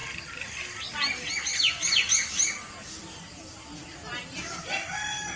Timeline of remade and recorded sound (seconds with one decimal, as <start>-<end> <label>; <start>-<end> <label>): 0.0-4.1 recorded; 4.1-4.9 remade; 4.9-5.4 recorded